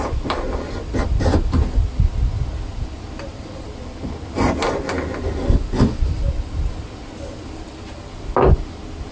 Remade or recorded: recorded